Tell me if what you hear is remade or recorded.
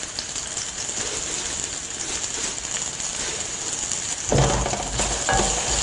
recorded